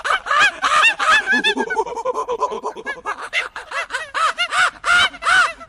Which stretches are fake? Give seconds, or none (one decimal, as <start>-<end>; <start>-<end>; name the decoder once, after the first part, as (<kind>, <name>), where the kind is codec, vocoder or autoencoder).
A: 2.2-2.8 (codec, HILCodec); 3.2-3.7